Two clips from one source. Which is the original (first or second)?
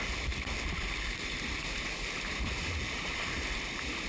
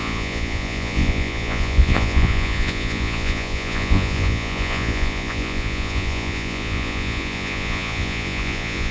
first